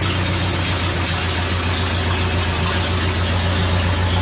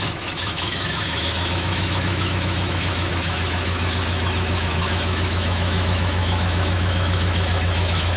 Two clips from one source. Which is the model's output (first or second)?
second